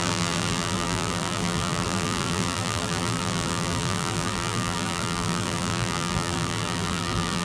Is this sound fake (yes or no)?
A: yes